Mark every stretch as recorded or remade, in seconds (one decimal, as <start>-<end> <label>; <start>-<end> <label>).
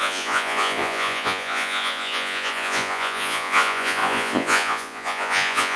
0.0-5.8 remade